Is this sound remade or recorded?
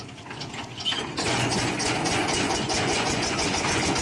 remade